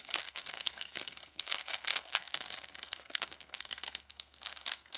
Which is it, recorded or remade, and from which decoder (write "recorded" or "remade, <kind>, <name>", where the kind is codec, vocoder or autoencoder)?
remade, codec, SNAC